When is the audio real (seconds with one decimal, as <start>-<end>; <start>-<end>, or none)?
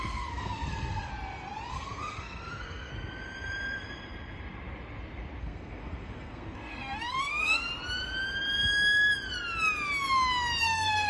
1.1-1.7; 2.9-5.4; 7.7-10.6